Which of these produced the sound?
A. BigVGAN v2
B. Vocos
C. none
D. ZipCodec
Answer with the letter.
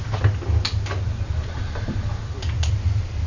C